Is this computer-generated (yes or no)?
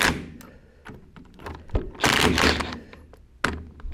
no